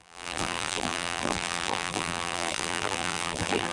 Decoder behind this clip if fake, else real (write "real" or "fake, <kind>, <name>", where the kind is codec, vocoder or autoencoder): fake, vocoder, BigVGAN v2